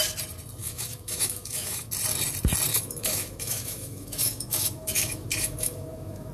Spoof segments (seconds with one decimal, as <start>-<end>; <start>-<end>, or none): 0.6-1.9; 2.7-6.3